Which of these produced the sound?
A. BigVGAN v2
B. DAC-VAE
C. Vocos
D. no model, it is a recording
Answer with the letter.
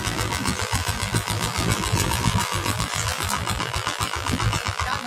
A